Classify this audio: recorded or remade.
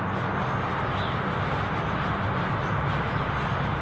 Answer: recorded